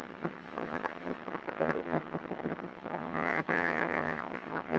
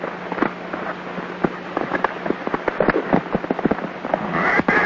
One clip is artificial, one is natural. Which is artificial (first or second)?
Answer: first